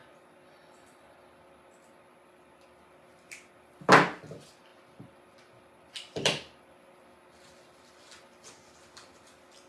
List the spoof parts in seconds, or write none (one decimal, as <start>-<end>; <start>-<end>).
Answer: none